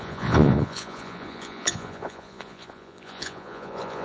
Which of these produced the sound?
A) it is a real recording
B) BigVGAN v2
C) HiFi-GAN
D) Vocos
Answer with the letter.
D